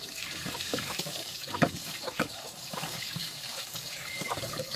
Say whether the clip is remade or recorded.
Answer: remade